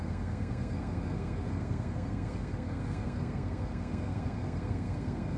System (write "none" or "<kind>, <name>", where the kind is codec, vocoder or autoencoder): codec, SNAC